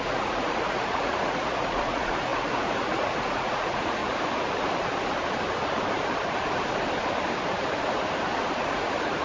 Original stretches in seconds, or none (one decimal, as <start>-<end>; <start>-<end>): 4.0-8.7